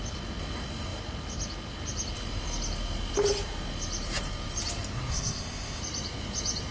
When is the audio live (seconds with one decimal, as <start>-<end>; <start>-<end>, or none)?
0.0-5.1; 5.8-6.7